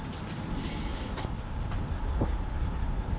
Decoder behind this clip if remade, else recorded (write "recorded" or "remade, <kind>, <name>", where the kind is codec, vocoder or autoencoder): recorded